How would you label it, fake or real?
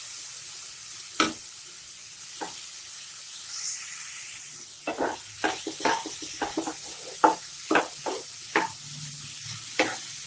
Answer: fake